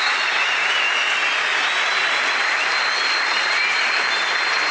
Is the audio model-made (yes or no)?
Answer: no